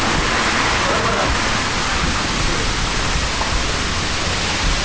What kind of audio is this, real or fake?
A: real